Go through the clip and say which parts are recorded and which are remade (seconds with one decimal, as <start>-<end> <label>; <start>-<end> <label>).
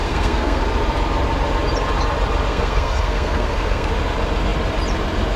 0.0-0.6 remade; 0.6-2.5 recorded; 2.5-3.9 remade; 3.9-5.4 recorded